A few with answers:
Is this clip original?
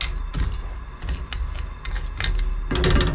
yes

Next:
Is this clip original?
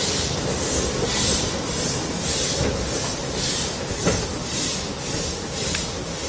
yes